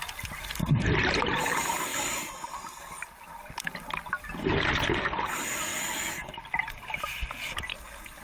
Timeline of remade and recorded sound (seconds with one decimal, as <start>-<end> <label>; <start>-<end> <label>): 0.0-8.2 recorded